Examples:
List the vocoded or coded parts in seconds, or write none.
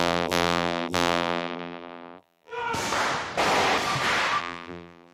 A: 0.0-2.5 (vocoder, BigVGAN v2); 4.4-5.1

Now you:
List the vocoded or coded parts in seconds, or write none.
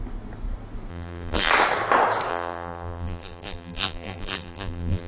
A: 0.9-1.5 (vocoder, BigVGAN v2); 2.3-5.1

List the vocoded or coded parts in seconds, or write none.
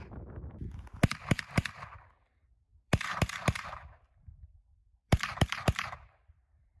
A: 2.7-6.8 (vocoder, BigVGAN v2)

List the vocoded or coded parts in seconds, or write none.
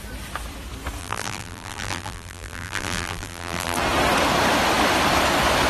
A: 1.0-3.8 (vocoder, BigVGAN v2)